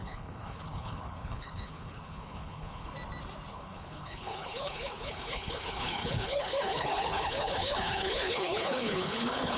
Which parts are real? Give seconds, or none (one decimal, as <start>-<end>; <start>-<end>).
2.9-3.5